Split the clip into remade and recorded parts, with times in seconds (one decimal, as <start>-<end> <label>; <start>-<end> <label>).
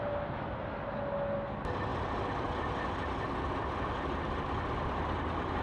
0.0-5.6 recorded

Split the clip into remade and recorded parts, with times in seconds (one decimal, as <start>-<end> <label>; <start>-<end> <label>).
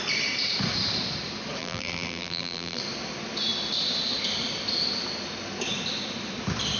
0.0-1.6 recorded; 1.6-2.8 remade; 2.8-6.8 recorded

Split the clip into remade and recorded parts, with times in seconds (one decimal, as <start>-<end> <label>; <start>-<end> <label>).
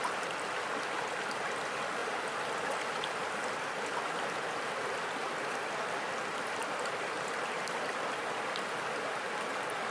0.0-9.9 recorded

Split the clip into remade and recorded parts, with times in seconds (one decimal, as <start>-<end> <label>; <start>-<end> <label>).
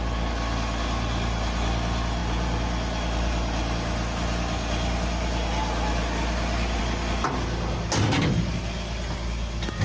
0.0-9.8 recorded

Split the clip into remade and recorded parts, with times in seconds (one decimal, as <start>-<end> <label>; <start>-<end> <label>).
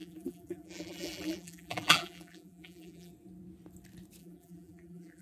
0.0-3.1 remade; 3.1-4.2 recorded; 4.2-5.2 remade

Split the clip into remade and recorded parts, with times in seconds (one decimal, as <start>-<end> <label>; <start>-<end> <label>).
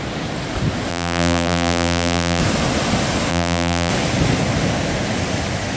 0.0-0.9 recorded; 0.9-2.4 remade; 2.4-3.3 recorded; 3.3-3.9 remade; 3.9-5.8 recorded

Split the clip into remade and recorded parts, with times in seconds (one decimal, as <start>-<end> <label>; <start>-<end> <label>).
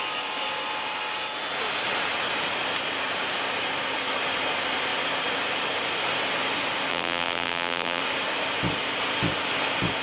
0.0-6.9 recorded; 6.9-8.0 remade; 8.0-10.0 recorded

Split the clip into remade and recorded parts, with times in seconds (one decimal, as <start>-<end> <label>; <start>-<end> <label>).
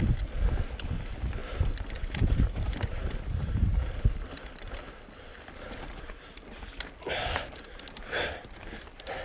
0.0-1.4 recorded; 1.4-4.4 remade; 4.4-9.2 recorded